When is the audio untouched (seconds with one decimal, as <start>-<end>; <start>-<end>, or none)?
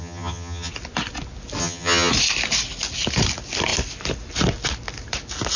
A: 0.7-1.6; 2.1-5.6